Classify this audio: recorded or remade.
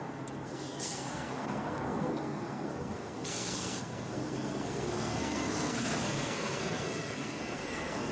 remade